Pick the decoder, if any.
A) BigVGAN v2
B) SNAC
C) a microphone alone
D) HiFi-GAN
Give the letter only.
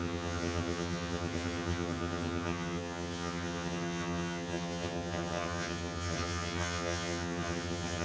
D